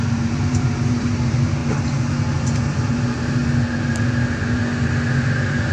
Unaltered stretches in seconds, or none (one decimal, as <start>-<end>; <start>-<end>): 1.6-2.4; 3.4-3.9; 4.6-5.7